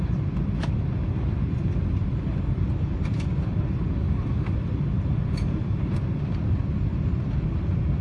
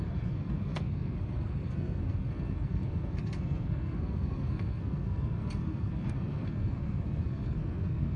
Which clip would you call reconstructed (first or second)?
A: second